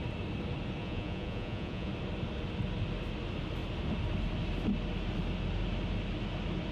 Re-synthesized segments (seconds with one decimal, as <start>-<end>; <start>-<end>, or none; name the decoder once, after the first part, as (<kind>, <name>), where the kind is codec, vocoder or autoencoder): 0.8-1.9 (vocoder, Vocos)